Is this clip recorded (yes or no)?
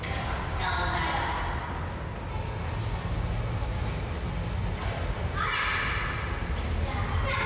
yes